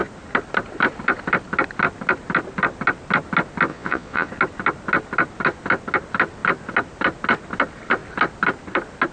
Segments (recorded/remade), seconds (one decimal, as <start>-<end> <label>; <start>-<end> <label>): 0.0-3.7 recorded; 3.7-4.3 remade; 4.3-9.1 recorded